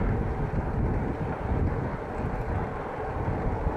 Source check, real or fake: real